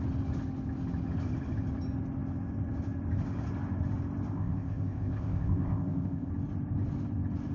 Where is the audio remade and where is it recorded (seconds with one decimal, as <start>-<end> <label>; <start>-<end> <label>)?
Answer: 0.0-4.3 recorded; 4.3-6.3 remade; 6.3-7.5 recorded